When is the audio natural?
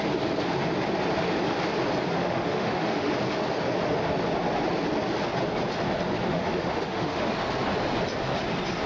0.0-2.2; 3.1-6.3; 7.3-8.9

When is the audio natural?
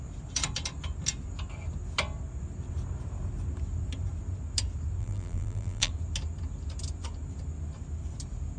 0.0-5.0; 5.9-8.6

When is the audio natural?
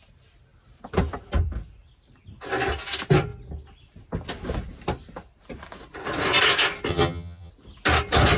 0.0-6.9; 7.5-8.4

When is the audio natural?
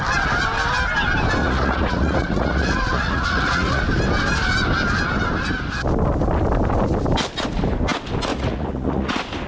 0.0-1.4; 3.8-8.3; 9.1-9.5